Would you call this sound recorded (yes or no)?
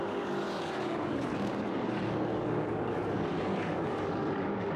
no